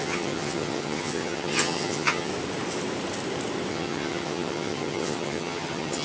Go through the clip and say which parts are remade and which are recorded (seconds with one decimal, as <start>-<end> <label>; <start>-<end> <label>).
0.0-2.3 remade; 2.3-3.7 recorded; 3.7-6.0 remade